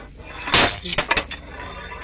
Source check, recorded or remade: recorded